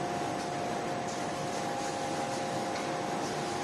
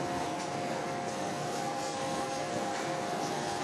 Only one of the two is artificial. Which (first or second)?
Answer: second